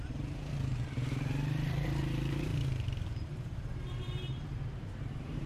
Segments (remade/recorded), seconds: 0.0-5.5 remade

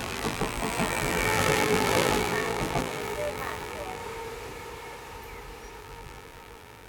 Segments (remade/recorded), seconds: 0.0-4.0 remade; 4.0-5.8 recorded; 5.8-6.9 remade

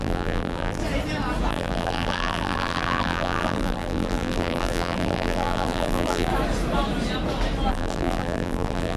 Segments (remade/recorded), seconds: 0.0-0.8 remade; 0.8-1.5 recorded; 1.5-6.3 remade; 6.3-7.7 recorded; 7.7-9.0 remade

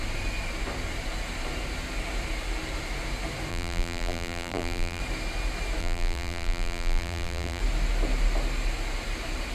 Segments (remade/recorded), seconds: 0.0-3.5 recorded; 3.5-5.0 remade; 5.0-5.8 recorded; 5.8-7.6 remade; 7.6-9.5 recorded

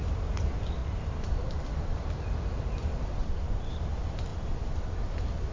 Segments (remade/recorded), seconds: 0.0-0.8 recorded; 0.8-2.2 remade; 2.2-3.2 recorded; 3.2-3.8 remade; 3.8-4.3 recorded; 4.3-5.1 remade; 5.1-5.5 recorded

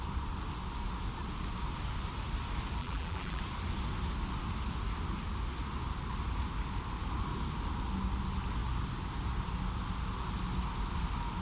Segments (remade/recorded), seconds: 0.0-2.8 recorded; 2.8-3.4 remade; 3.4-11.4 recorded